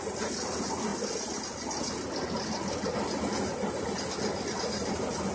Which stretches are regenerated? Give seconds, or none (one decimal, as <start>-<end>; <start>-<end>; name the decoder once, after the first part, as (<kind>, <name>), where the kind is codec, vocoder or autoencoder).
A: none